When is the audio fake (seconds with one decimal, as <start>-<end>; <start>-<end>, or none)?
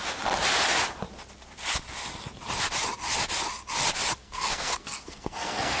4.2-5.8